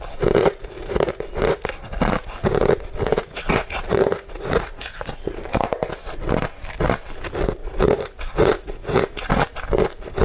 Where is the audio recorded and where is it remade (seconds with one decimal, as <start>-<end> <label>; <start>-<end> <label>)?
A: 0.0-0.4 recorded; 0.4-1.2 remade; 1.2-3.1 recorded; 3.1-5.4 remade; 5.4-7.6 recorded; 7.6-9.3 remade; 9.3-10.2 recorded

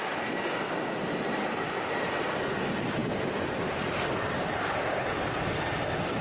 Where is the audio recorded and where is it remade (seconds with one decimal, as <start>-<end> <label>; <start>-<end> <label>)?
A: 0.0-6.2 recorded

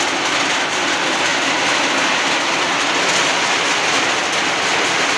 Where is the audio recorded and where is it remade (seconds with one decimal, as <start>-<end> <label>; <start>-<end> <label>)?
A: 0.0-5.2 recorded

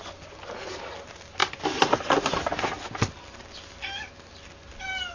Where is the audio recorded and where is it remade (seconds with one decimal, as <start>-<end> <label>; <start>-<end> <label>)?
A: 0.0-5.1 recorded

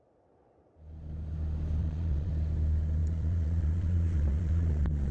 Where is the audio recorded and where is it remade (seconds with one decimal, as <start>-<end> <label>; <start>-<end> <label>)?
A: 0.0-1.8 recorded; 1.8-2.3 remade; 2.3-3.0 recorded; 3.0-5.1 remade

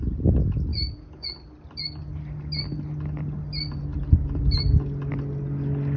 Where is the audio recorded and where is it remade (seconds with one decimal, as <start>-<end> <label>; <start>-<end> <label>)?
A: 0.0-0.7 recorded; 0.7-1.3 remade; 1.3-6.0 recorded

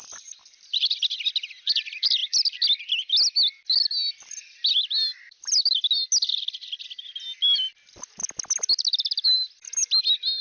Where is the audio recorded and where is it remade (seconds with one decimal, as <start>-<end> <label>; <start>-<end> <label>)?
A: 0.0-10.4 recorded